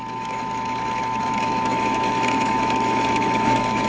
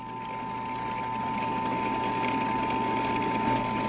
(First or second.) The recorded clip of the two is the second